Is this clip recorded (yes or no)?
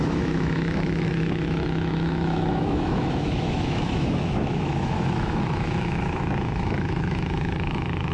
no